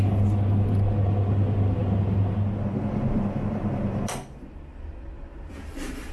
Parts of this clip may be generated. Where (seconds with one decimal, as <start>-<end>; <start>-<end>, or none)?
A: none